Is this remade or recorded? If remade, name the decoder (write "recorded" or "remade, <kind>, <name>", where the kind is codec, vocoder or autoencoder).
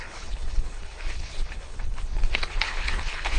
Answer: remade, codec, HILCodec